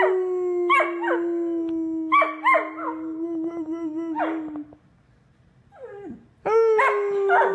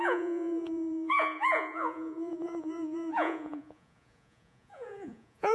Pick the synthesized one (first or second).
second